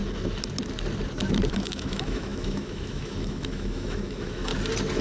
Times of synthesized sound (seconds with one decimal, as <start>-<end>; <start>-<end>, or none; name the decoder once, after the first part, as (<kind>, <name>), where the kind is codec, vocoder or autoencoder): 1.5-4.5 (autoencoder, DAC-VAE)